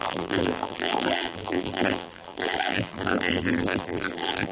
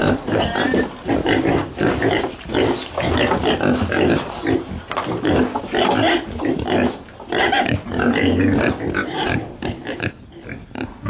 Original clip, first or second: second